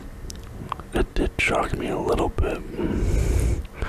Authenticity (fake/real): real